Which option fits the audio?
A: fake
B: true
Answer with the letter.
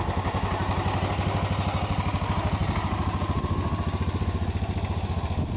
B